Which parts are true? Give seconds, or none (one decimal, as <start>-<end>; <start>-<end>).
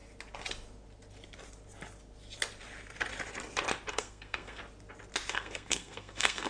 0.0-3.9; 4.6-5.3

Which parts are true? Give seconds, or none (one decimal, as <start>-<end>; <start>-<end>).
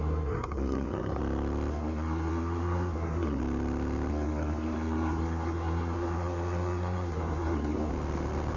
1.2-1.7; 3.4-4.1; 7.9-8.6